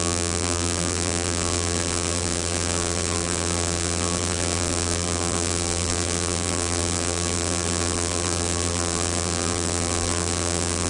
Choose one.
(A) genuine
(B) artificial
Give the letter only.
B